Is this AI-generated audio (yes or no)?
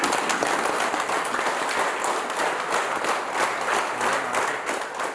no